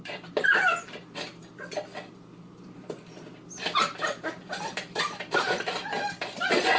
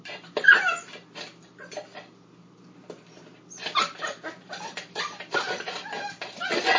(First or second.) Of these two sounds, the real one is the second